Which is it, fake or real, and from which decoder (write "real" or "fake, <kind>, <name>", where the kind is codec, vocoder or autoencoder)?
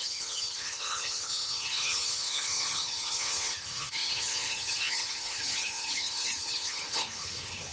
fake, codec, HILCodec